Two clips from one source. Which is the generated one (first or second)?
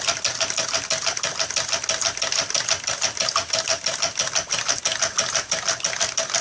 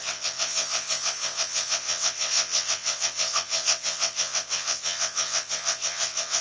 second